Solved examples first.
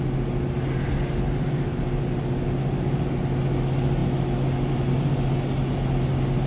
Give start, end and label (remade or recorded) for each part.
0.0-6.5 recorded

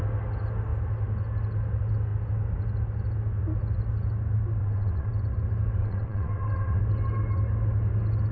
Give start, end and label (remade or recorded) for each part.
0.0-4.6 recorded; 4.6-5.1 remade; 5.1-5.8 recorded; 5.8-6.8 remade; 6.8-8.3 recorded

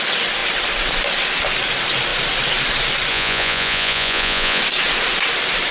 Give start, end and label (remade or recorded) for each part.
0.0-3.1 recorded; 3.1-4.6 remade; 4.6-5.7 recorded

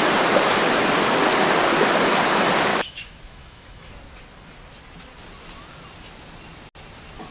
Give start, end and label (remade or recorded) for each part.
0.0-2.7 recorded; 2.7-3.9 remade; 3.9-7.3 recorded

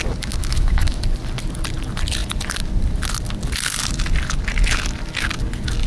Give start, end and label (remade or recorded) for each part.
0.0-0.4 recorded; 0.4-1.0 remade; 1.0-5.9 recorded

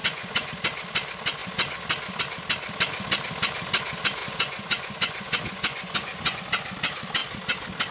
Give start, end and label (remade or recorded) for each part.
0.0-0.5 remade; 0.5-4.2 recorded; 4.2-6.4 remade; 6.4-7.9 recorded